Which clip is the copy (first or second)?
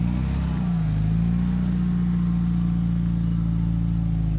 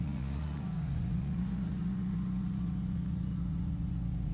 second